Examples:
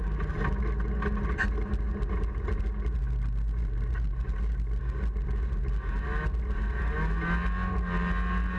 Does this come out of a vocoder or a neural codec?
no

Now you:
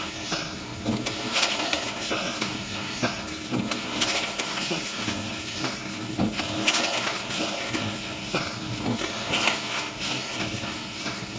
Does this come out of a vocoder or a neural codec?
yes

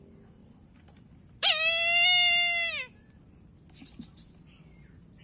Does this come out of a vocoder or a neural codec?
no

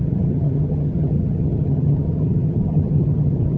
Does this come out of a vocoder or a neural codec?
yes